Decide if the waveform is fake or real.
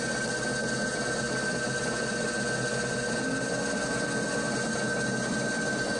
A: real